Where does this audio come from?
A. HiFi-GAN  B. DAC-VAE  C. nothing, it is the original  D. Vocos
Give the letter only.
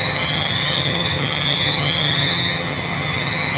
A